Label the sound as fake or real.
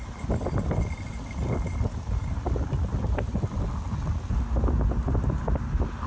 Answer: real